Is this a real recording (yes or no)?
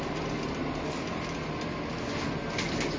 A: yes